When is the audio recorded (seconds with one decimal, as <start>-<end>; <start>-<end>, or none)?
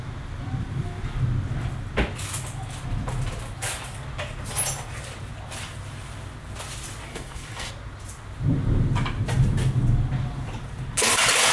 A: 0.0-7.1; 7.7-11.5